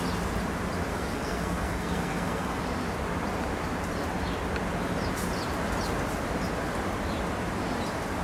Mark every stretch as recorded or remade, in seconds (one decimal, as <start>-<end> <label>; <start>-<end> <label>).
0.0-0.9 recorded; 0.9-2.6 remade; 2.6-8.2 recorded